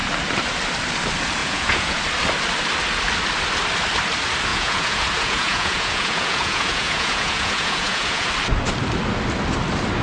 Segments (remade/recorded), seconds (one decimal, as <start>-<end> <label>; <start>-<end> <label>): 0.0-1.4 recorded; 1.4-2.0 remade; 2.0-4.5 recorded; 4.5-8.3 remade; 8.3-10.0 recorded